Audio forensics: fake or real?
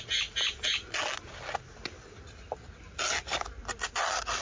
real